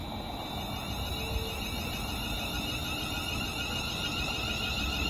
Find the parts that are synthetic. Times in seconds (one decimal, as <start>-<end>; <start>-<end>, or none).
none